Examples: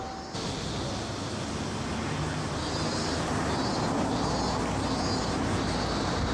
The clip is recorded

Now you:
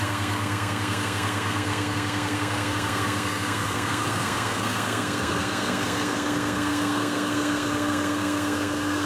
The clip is remade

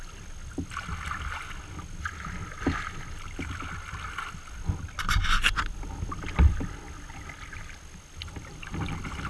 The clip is recorded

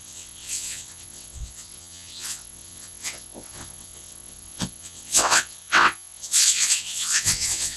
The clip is remade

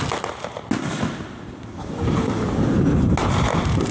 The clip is recorded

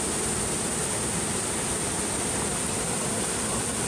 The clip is recorded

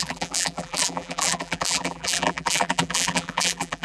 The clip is remade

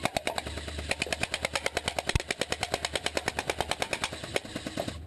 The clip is recorded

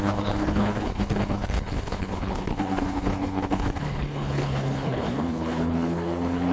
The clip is remade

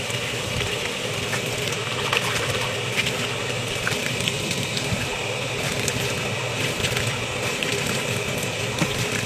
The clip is remade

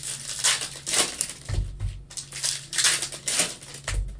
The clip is recorded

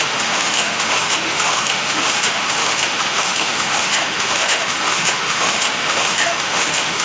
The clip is remade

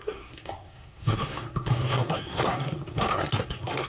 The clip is remade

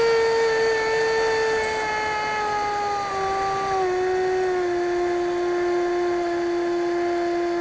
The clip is recorded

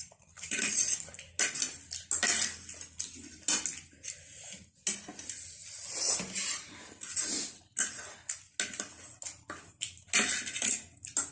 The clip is recorded